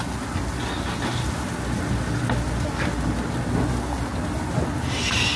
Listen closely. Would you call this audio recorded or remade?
recorded